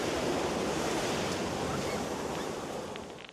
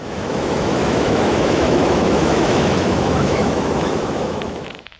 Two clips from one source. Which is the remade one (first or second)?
second